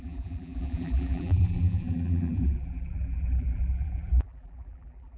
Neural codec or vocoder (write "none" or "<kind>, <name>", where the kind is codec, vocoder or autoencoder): vocoder, BigVGAN v2